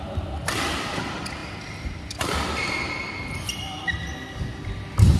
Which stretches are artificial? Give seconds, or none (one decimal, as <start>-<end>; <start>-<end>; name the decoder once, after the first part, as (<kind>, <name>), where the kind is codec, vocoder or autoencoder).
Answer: none

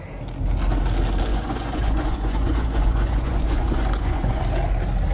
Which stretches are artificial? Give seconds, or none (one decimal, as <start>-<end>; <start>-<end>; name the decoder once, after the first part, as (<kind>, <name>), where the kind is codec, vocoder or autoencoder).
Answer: 1.3-4.4 (vocoder, Vocos)

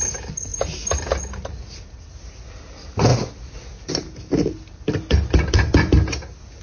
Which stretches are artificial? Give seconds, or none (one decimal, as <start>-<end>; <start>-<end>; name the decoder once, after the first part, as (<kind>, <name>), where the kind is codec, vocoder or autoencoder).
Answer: none

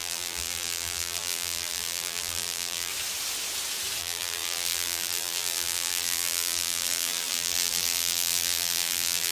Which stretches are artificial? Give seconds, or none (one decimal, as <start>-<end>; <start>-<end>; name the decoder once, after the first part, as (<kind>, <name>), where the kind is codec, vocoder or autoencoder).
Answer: 0.0-2.9 (vocoder, BigVGAN v2); 4.0-9.3

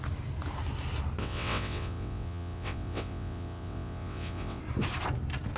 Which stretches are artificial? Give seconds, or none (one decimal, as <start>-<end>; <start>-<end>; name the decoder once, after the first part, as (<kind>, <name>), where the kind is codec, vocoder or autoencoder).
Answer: 1.2-4.6 (vocoder, WaveNeXt)

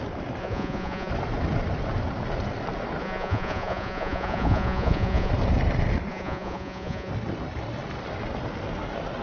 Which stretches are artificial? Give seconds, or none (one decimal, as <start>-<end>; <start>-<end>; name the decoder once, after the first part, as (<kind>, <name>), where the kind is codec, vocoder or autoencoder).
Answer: 0.4-1.1 (vocoder, Vocos); 3.0-5.3; 6.1-7.1